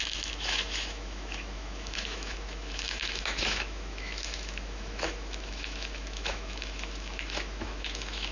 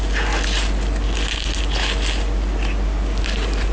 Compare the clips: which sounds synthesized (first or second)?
first